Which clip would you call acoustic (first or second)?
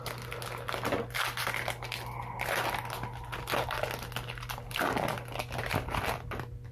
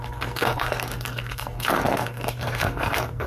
first